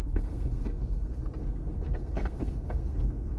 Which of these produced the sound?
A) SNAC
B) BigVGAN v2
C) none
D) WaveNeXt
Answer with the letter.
A